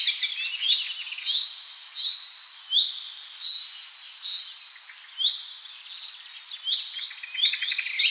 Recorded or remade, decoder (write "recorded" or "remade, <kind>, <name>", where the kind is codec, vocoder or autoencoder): recorded